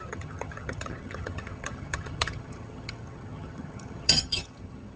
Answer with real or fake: fake